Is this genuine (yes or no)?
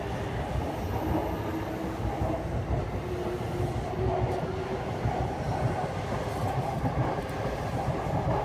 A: yes